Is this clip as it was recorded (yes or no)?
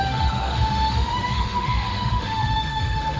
no